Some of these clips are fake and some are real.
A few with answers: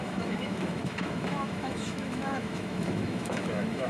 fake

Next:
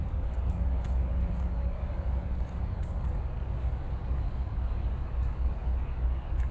fake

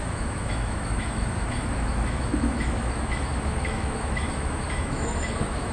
fake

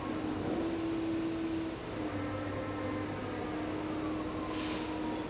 real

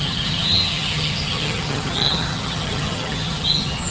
fake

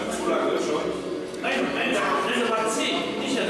real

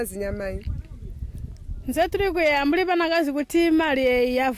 real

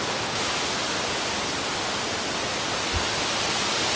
real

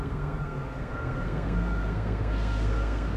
fake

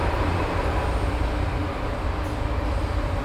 real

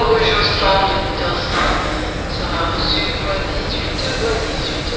real